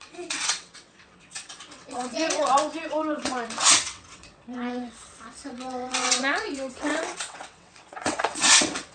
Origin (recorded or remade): remade